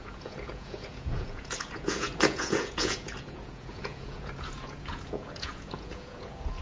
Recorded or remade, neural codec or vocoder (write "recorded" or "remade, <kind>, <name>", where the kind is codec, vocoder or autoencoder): remade, vocoder, Vocos